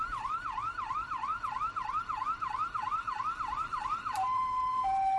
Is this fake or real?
fake